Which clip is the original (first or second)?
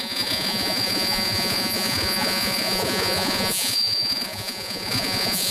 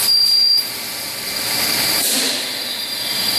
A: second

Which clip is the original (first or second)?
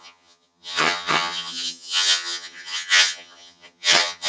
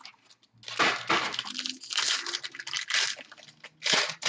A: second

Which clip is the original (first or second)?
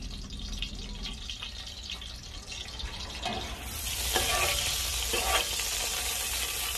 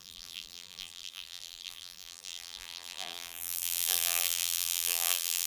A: first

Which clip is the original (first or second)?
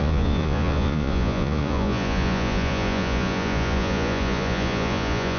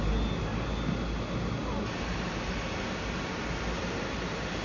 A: second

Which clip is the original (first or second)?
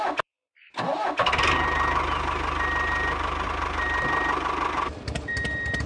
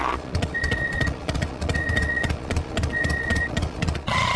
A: first